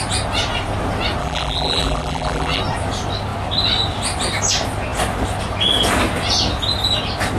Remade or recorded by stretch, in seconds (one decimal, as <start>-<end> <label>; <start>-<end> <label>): 0.0-1.2 recorded; 1.2-2.6 remade; 2.6-7.4 recorded